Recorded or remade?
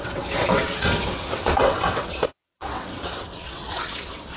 remade